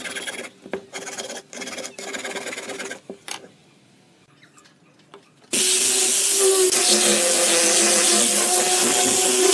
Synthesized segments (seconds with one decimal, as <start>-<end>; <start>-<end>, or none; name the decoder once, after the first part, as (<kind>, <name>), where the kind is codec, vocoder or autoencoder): none